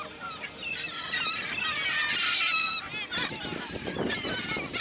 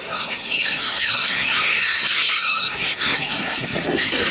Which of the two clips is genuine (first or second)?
first